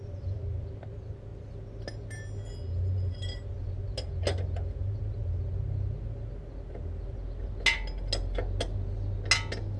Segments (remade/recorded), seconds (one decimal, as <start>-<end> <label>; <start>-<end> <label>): 0.0-9.8 recorded